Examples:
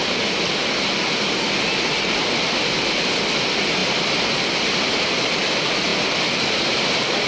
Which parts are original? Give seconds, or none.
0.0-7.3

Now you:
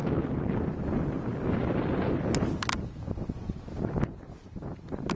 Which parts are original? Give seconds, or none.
0.0-5.2